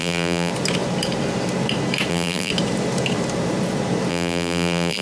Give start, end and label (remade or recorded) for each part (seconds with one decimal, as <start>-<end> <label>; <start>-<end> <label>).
0.0-0.5 remade; 0.5-2.1 recorded; 2.1-2.5 remade; 2.5-4.1 recorded; 4.1-5.0 remade